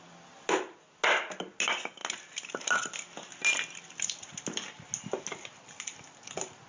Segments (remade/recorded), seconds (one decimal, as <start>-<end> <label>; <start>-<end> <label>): 0.0-6.7 recorded